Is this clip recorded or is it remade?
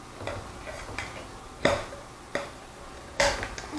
recorded